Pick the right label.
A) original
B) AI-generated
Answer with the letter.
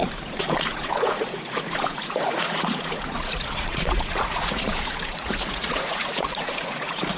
B